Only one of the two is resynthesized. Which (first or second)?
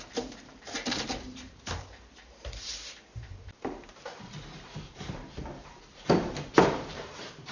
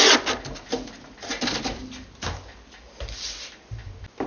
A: first